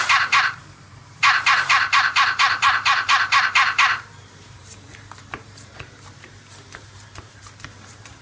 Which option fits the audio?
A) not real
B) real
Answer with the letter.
A